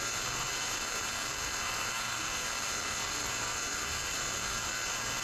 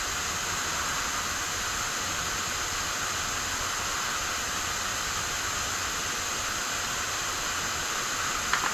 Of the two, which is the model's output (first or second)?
first